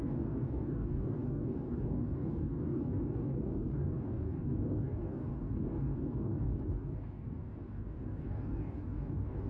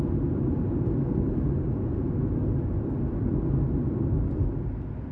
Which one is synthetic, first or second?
first